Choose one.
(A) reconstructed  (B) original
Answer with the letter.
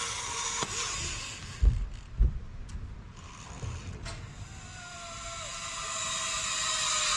B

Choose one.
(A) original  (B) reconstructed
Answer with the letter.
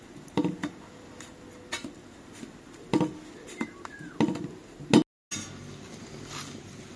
A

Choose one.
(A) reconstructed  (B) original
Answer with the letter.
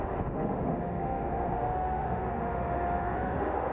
A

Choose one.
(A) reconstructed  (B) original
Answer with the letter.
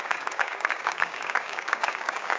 A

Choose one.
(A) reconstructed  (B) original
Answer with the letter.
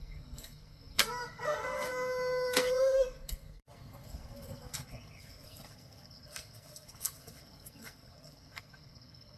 A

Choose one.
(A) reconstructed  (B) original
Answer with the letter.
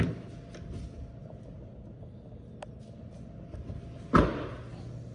B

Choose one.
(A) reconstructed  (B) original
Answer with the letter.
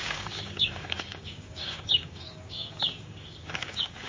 A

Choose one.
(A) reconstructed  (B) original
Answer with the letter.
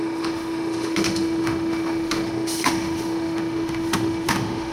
A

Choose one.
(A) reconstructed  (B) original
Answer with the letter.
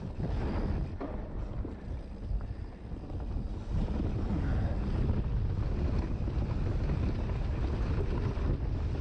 B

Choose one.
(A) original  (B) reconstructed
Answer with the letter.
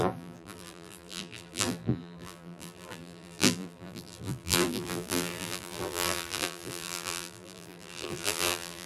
B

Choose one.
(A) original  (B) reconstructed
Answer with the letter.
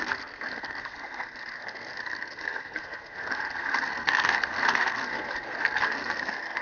B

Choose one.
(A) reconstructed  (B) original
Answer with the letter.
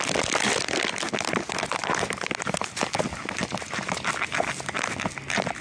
B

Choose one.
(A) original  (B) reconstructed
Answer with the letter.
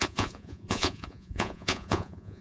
B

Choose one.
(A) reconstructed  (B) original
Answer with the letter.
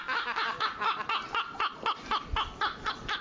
B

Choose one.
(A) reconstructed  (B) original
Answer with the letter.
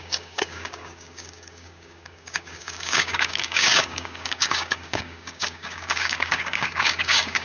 A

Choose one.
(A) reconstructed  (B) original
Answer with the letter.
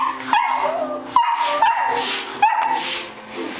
B